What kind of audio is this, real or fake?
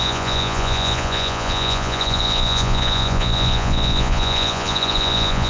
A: fake